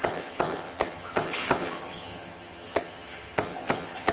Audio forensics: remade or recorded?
remade